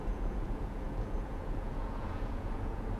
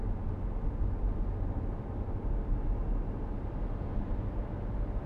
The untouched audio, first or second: second